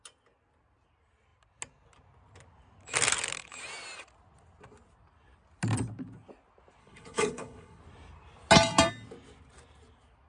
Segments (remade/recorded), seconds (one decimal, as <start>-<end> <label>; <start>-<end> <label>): 0.0-6.8 recorded; 6.8-7.8 remade; 7.8-10.3 recorded